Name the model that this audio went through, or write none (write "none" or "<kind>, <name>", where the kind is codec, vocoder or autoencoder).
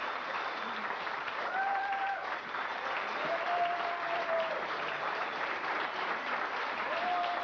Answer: vocoder, BigVGAN v2